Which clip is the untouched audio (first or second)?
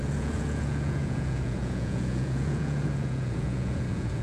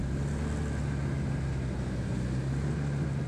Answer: second